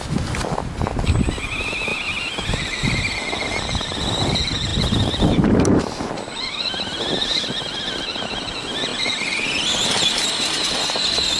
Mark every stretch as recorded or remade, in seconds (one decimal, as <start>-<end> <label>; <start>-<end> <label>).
0.0-1.9 recorded; 1.9-3.0 remade; 3.0-4.7 recorded; 4.7-5.8 remade; 5.8-8.9 recorded; 8.9-9.7 remade; 9.7-11.4 recorded